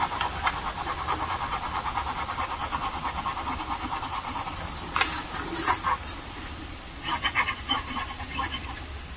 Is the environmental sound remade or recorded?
recorded